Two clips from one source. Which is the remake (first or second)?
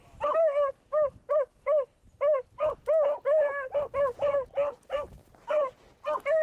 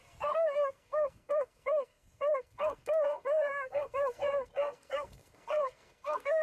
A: second